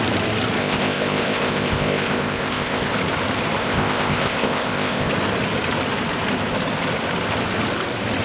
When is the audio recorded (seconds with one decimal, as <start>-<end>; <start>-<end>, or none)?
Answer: 0.0-0.6; 2.9-3.6; 5.1-8.2

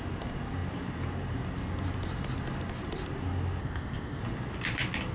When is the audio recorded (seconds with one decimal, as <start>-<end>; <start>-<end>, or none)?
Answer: 0.0-3.6; 4.2-5.1